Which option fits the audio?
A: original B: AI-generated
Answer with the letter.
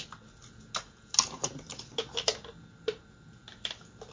A